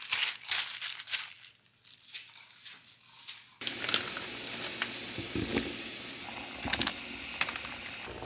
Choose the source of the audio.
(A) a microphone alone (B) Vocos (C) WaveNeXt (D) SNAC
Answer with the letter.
A